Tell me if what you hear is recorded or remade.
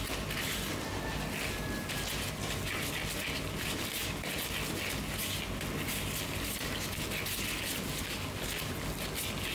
recorded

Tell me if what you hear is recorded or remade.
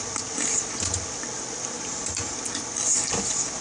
recorded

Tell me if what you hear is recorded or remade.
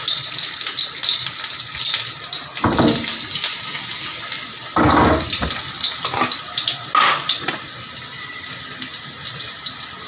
recorded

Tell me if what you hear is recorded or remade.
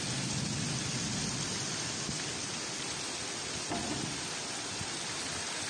remade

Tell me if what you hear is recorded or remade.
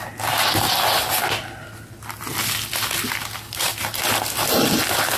recorded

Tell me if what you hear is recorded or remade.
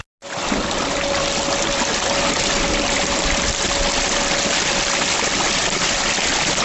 recorded